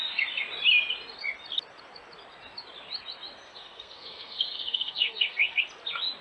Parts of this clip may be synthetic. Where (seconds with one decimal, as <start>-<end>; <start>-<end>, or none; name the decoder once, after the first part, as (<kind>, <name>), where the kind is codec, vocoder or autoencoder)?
3.5-5.6 (codec, SNAC)